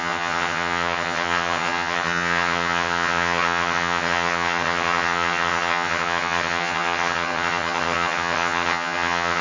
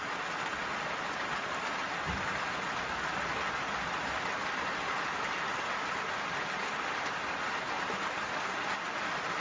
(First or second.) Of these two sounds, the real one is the second